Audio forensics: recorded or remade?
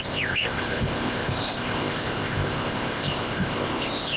remade